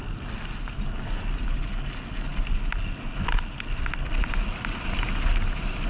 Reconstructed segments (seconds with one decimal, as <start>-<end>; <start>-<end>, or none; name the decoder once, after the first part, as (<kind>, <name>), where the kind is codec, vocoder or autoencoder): none